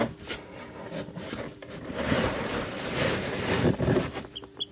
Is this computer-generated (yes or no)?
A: yes